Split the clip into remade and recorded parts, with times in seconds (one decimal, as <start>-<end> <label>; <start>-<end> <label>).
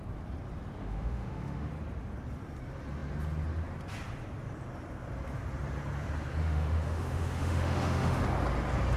0.0-0.8 recorded; 0.8-1.7 remade; 1.7-6.4 recorded; 6.4-8.2 remade; 8.2-9.0 recorded